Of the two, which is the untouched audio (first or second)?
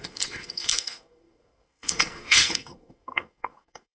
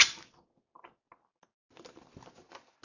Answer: second